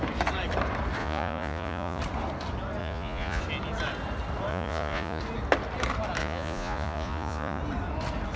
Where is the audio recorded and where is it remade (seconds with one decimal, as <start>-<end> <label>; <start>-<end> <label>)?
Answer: 0.0-1.0 recorded; 1.0-2.0 remade; 2.0-2.8 recorded; 2.8-3.4 remade; 3.4-4.5 recorded; 4.5-5.2 remade; 5.2-6.2 recorded; 6.2-7.6 remade; 7.6-8.4 recorded